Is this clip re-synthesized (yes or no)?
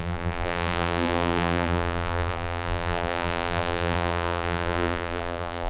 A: yes